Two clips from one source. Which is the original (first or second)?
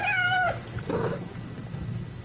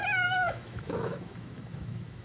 first